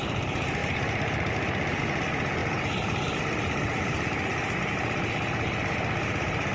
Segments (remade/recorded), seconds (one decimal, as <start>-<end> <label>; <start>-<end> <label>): 0.0-6.5 recorded